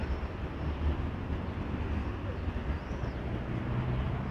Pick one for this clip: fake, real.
real